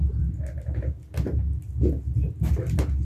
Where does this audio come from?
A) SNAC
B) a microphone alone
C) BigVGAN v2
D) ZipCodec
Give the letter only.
B